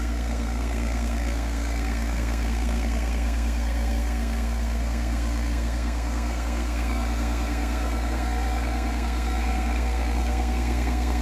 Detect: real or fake fake